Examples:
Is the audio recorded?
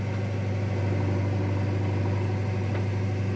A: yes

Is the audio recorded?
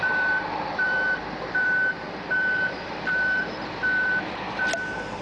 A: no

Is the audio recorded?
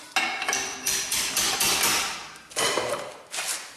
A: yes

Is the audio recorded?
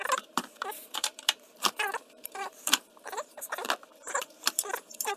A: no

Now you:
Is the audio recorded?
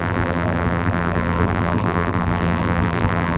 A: no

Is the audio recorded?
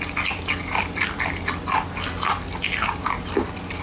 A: yes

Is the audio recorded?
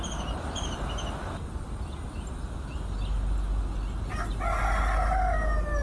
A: yes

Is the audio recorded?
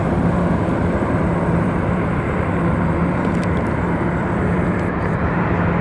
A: no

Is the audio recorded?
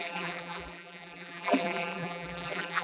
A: no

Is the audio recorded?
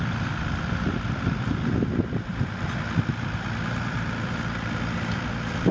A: no